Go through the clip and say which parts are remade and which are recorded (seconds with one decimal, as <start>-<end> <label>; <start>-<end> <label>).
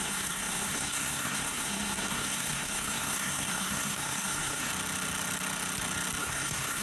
0.0-4.7 remade; 4.7-6.2 recorded; 6.2-6.8 remade